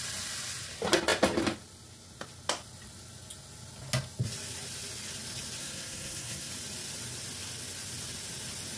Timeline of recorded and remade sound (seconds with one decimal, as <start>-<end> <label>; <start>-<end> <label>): 0.0-5.6 recorded; 5.6-6.5 remade; 6.5-8.8 recorded